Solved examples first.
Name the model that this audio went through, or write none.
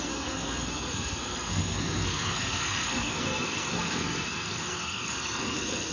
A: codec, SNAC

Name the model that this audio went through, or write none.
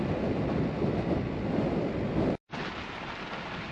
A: none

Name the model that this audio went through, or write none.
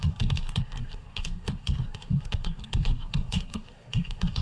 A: codec, SNAC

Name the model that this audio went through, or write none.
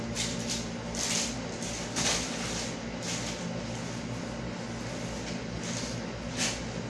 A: none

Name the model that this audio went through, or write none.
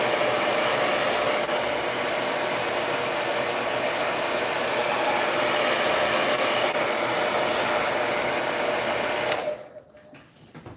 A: none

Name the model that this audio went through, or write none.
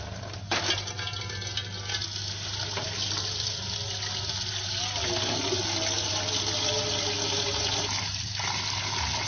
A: none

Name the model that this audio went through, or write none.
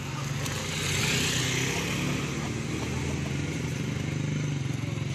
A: none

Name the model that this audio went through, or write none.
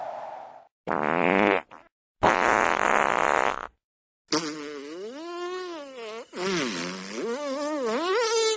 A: none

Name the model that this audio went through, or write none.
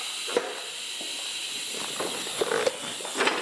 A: none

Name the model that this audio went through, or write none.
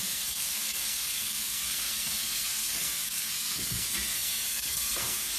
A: codec, SNAC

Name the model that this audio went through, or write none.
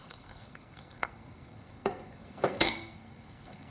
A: codec, SNAC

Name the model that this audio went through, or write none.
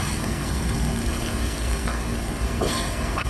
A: codec, SNAC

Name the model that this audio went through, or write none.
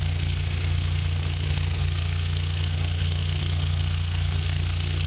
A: codec, SNAC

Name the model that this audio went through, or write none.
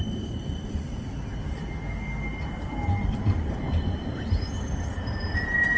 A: none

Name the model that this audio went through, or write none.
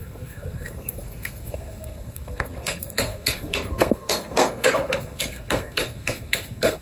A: codec, SNAC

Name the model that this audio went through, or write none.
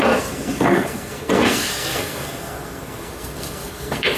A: codec, SNAC